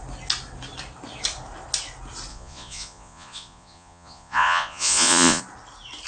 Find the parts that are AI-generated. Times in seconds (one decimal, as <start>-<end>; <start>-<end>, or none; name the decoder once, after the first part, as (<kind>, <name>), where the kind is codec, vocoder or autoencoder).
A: 2.3-5.4 (vocoder, Vocos)